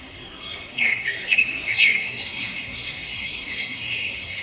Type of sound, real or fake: fake